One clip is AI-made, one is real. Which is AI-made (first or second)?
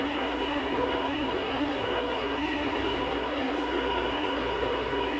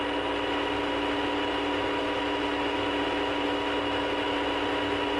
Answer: first